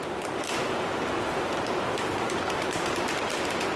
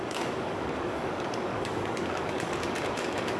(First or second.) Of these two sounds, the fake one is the second